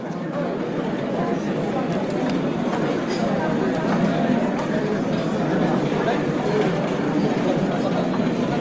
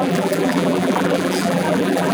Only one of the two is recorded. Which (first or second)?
first